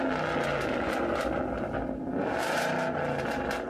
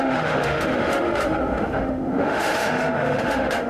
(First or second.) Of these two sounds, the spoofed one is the second